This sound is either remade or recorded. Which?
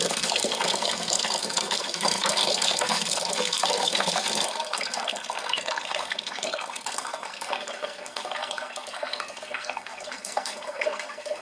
remade